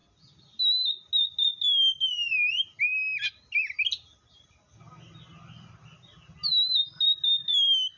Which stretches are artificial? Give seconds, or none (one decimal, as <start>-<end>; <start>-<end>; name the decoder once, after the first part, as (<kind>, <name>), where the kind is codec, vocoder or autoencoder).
none